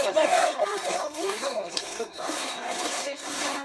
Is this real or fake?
fake